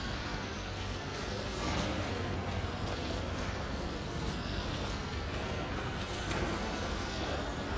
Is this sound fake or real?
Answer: fake